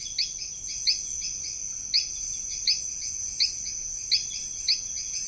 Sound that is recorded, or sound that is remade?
recorded